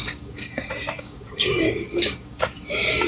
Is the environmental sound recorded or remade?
remade